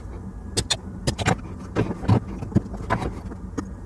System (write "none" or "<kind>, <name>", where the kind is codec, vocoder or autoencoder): none